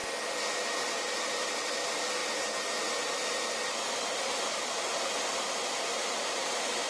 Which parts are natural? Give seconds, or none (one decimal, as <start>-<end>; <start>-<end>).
0.0-6.9